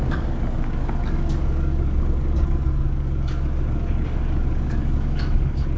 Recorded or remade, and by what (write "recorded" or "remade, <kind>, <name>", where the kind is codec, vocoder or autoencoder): remade, codec, DAC